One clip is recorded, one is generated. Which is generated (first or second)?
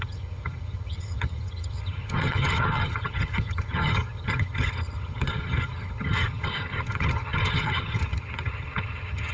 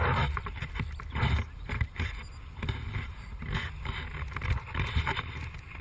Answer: first